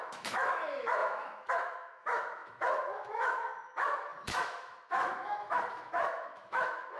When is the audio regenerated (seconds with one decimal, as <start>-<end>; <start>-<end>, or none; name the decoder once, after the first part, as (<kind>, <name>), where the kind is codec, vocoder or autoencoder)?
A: 0.0-7.0 (autoencoder, DAC-VAE)